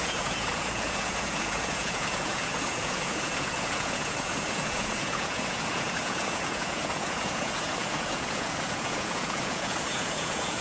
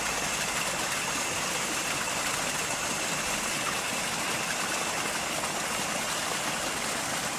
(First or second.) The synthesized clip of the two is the first